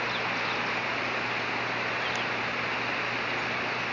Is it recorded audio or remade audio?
recorded